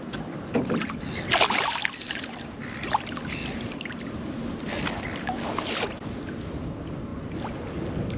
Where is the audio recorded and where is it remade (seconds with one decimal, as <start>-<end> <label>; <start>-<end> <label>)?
0.0-1.8 recorded; 1.8-4.4 remade; 4.4-8.2 recorded